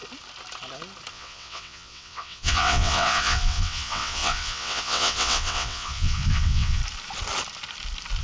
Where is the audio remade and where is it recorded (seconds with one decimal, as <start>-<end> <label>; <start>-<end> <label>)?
0.0-1.1 recorded; 1.1-6.8 remade; 6.8-8.2 recorded